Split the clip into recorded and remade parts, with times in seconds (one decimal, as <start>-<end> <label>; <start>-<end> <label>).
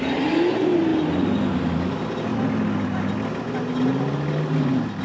0.0-5.0 recorded